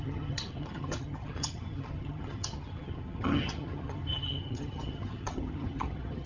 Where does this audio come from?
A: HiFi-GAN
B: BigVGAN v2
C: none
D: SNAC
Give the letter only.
A